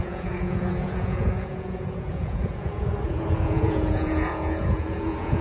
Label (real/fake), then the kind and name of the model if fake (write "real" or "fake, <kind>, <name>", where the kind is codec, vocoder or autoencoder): fake, vocoder, Vocos